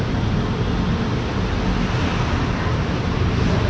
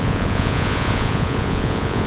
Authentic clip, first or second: first